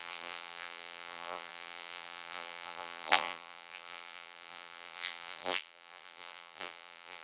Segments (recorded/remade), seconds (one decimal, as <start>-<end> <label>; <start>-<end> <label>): 0.0-7.2 remade